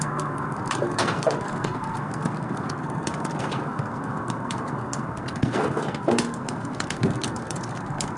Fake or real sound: fake